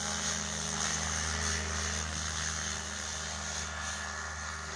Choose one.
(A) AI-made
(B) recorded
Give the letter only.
B